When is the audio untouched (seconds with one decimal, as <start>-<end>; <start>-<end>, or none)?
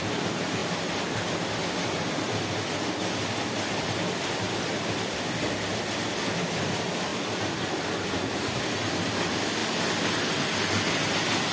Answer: 0.0-11.5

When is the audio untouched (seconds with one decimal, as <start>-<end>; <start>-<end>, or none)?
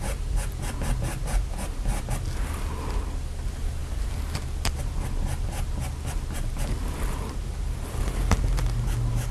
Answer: 0.0-9.3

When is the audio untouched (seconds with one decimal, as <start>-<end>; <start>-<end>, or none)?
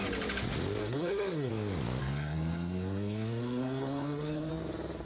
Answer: 0.0-0.8; 1.5-2.0; 4.5-5.0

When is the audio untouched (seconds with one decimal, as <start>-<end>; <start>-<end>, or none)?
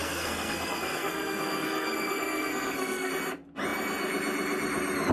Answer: 3.1-5.1